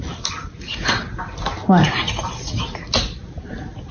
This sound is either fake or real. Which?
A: real